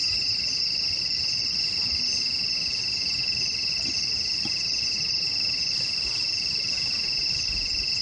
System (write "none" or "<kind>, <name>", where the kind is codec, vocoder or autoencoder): none